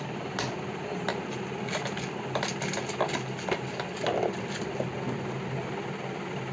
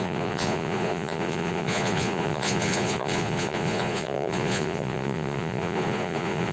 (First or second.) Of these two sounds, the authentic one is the first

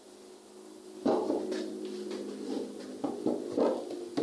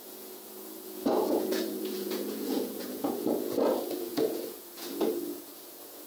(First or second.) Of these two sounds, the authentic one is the first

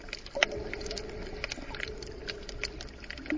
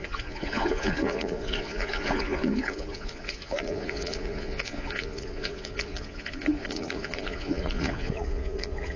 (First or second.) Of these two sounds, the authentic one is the first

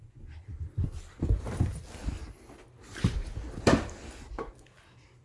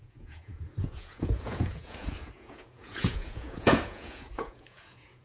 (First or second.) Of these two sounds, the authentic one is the first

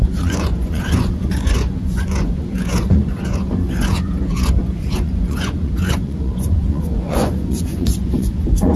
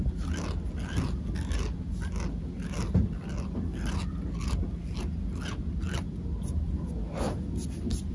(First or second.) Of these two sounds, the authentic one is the second